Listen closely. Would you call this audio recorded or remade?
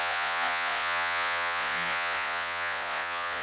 remade